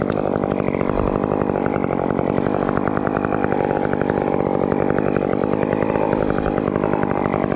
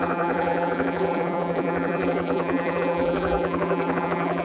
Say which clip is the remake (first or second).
second